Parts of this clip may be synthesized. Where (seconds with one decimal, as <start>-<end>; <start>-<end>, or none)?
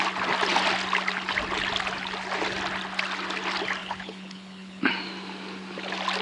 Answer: 3.8-4.9